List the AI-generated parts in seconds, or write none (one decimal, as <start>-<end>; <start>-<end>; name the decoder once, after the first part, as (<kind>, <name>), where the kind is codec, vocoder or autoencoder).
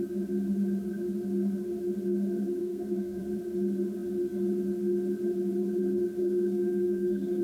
2.6-3.2 (codec, SNAC); 6.2-7.4